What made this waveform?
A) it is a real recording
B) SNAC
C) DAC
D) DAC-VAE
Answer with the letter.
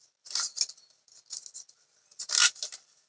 A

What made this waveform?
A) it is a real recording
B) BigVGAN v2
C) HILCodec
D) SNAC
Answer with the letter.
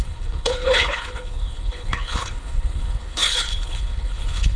C